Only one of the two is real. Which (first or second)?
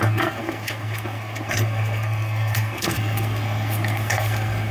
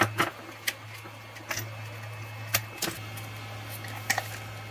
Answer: second